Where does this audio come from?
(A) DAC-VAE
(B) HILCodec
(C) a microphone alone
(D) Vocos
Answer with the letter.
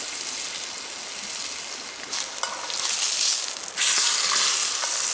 C